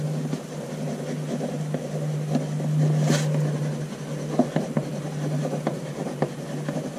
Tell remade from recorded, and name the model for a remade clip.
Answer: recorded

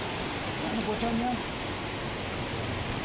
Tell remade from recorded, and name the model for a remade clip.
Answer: recorded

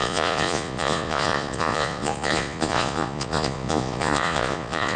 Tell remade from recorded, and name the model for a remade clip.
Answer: remade, vocoder, Vocos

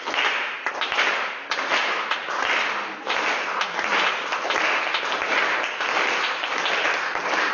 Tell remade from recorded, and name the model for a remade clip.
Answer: recorded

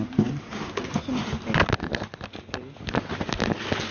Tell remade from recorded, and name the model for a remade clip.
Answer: recorded